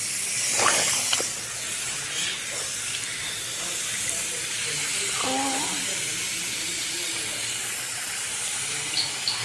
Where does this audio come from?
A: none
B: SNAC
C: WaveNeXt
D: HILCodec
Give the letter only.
A